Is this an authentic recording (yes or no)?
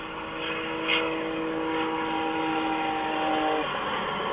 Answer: yes